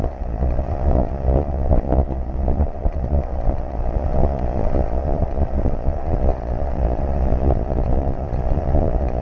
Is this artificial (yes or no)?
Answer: yes